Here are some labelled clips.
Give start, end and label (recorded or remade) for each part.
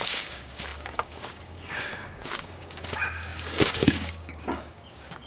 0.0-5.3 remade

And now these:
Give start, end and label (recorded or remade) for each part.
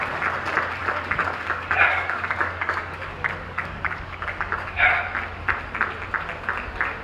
0.0-0.8 recorded; 0.8-4.9 remade; 4.9-7.0 recorded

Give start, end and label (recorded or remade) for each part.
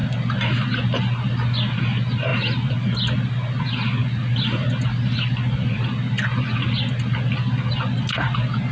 0.0-8.7 recorded